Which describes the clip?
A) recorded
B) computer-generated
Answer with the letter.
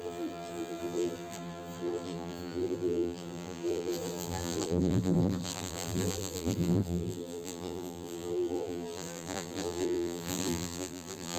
B